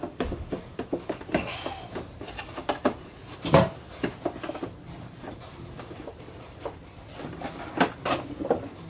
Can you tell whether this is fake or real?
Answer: fake